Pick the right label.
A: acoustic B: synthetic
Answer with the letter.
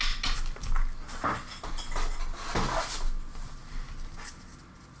A